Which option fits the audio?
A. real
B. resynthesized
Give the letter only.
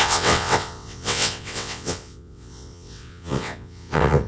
B